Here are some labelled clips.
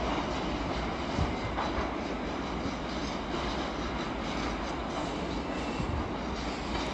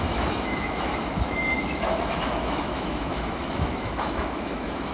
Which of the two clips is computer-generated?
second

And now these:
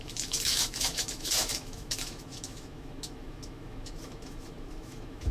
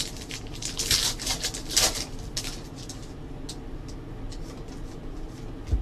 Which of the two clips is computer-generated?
first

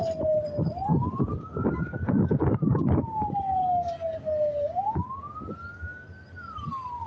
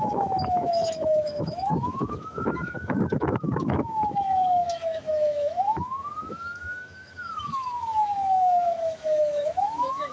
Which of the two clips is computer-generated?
second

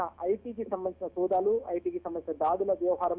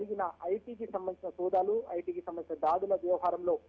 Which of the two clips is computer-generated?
first